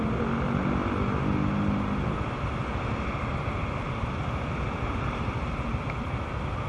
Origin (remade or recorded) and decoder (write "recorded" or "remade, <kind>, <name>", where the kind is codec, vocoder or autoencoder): recorded